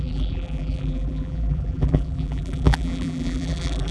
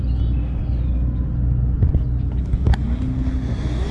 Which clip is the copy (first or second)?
first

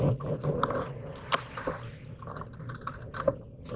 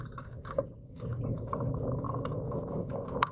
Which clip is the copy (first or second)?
second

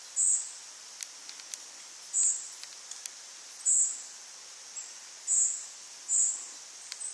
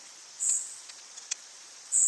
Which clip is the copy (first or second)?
second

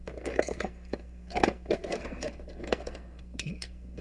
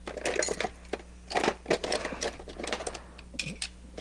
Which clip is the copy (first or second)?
first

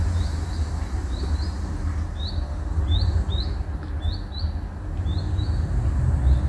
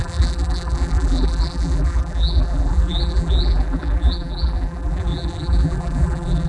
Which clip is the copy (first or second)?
second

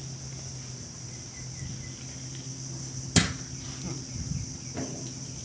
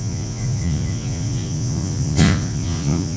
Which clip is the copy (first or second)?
second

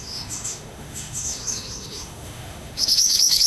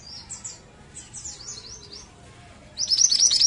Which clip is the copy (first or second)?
first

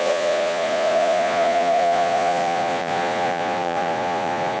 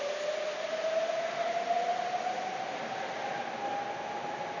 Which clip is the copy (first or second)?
first